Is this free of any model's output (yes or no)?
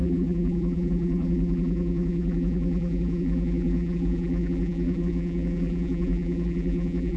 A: no